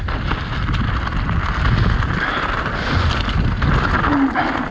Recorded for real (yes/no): yes